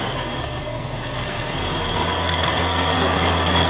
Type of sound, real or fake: fake